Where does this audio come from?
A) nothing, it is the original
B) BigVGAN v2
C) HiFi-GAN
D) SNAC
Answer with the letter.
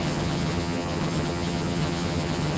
C